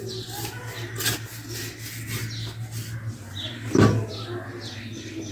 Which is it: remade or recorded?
recorded